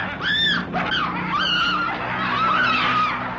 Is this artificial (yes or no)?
no